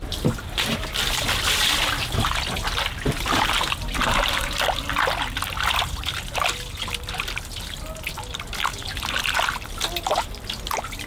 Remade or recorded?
recorded